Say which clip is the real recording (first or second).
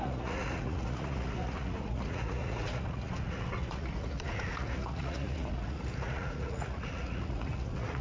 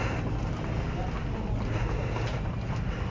second